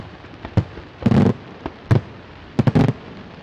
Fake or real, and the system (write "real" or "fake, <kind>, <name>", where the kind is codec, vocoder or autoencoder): real